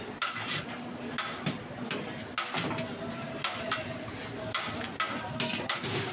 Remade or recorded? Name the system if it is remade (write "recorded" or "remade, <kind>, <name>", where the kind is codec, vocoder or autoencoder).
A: recorded